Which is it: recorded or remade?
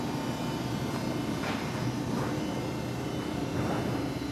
recorded